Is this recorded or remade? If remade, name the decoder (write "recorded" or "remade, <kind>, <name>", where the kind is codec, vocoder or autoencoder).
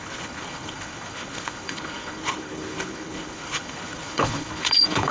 remade, codec, HILCodec